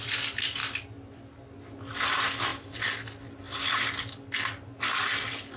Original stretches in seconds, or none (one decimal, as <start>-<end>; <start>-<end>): 0.0-5.6